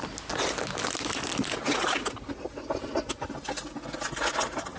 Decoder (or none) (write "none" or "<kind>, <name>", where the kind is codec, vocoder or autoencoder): none